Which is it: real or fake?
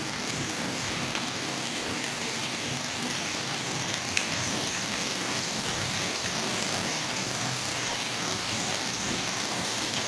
fake